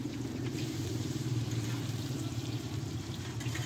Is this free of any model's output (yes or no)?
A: no